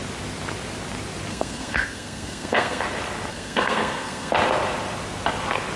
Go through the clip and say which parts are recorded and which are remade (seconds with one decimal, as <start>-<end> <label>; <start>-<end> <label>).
0.0-1.3 recorded; 1.3-2.8 remade; 2.8-3.3 recorded; 3.3-4.3 remade; 4.3-5.8 recorded